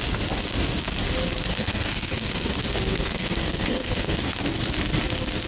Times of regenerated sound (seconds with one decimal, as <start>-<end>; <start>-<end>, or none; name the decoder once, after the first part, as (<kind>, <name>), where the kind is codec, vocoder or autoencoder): 1.5-2.5 (codec, SNAC); 2.9-4.4